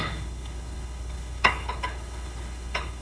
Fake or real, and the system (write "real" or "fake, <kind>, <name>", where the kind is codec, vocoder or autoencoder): fake, codec, HILCodec